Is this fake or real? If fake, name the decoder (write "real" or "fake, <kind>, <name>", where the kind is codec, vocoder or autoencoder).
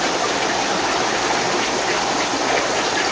real